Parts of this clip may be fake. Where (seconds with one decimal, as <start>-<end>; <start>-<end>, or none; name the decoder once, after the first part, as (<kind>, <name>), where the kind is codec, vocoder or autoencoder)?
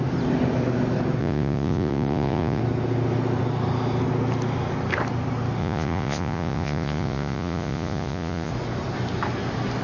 1.2-2.6 (vocoder, Vocos); 5.6-8.5